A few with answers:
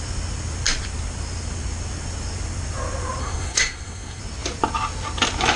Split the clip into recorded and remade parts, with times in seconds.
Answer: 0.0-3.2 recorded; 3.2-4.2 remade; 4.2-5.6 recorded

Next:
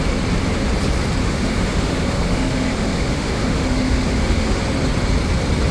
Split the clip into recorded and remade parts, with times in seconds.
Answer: 0.0-1.2 recorded; 1.2-4.6 remade; 4.6-5.7 recorded

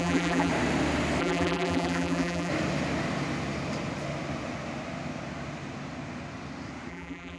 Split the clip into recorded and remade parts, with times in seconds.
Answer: 0.0-0.5 remade; 0.5-1.2 recorded; 1.2-2.5 remade; 2.5-6.9 recorded; 6.9-7.4 remade

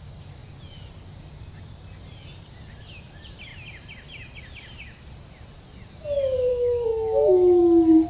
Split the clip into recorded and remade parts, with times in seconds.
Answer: 0.0-6.5 recorded; 6.5-7.6 remade; 7.6-8.1 recorded

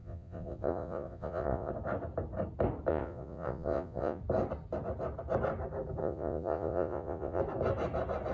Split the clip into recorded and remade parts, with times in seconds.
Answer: 0.0-1.7 remade; 1.7-2.9 recorded; 2.9-4.2 remade; 4.2-6.0 recorded; 6.0-7.4 remade; 7.4-8.3 recorded

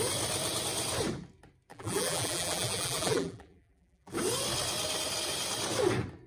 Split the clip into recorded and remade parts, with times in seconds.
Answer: 0.0-1.7 recorded; 1.7-4.1 remade; 4.1-6.3 recorded

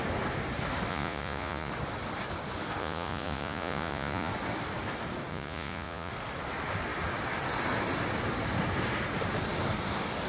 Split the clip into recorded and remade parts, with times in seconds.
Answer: 0.0-0.9 recorded; 0.9-1.7 remade; 1.7-2.8 recorded; 2.8-4.3 remade; 4.3-5.3 recorded; 5.3-6.1 remade; 6.1-10.3 recorded

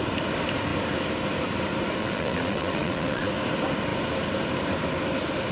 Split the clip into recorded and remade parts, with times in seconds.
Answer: 0.0-2.0 recorded; 2.0-3.3 remade; 3.3-5.5 recorded